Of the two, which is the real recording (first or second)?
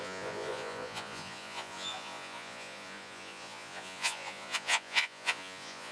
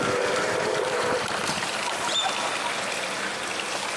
second